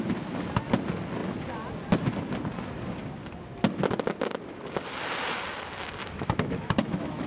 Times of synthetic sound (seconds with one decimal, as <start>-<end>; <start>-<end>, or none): 6.0-7.3